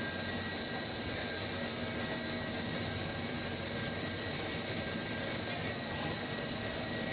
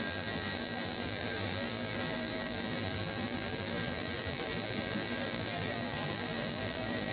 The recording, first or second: first